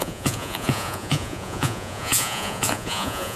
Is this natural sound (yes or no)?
no